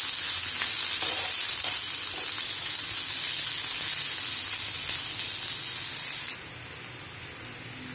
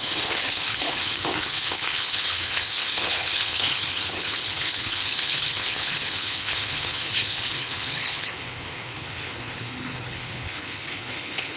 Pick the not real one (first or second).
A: second